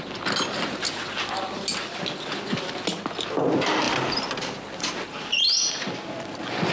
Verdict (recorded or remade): recorded